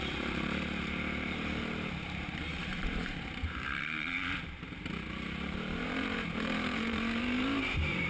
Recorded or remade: remade